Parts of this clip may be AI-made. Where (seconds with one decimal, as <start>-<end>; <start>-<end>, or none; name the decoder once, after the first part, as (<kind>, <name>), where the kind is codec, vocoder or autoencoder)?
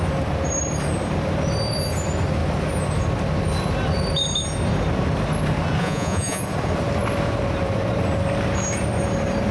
5.8-6.4 (vocoder, Vocos)